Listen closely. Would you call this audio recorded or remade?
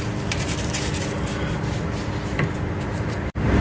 remade